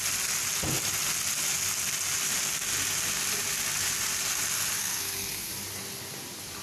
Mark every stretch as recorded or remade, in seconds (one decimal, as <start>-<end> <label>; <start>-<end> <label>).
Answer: 0.0-4.8 recorded; 4.8-5.5 remade; 5.5-6.6 recorded